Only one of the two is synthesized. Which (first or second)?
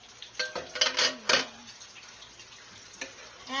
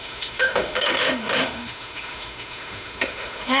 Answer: second